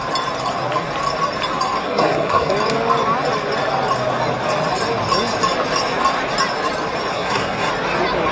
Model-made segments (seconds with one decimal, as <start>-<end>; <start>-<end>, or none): 1.8-2.5; 7.1-7.7